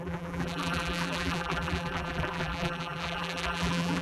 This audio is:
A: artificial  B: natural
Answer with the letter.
A